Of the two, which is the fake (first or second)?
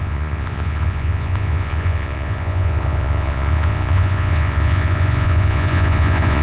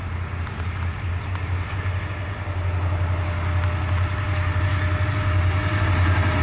first